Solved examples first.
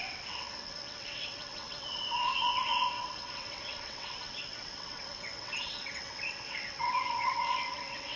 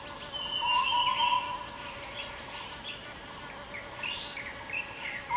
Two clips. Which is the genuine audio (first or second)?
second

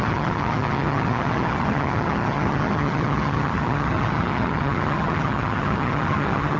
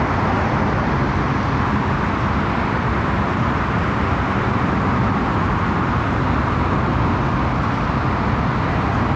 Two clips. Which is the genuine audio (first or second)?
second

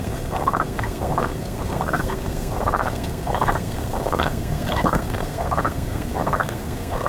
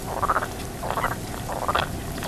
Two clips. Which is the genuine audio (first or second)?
second